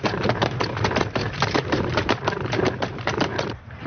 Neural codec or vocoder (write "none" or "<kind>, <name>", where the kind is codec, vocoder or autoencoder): vocoder, BigVGAN v2